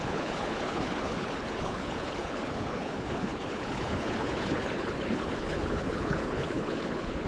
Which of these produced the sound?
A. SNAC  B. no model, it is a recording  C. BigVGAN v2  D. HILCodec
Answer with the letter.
D